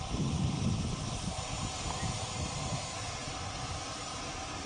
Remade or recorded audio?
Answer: remade